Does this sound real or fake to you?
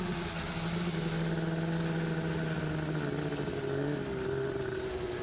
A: real